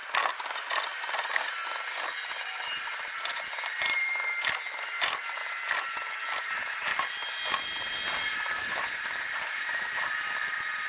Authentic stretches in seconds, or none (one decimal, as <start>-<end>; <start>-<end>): 0.0-2.8; 5.4-6.4; 6.9-7.5